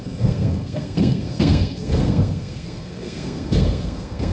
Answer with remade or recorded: remade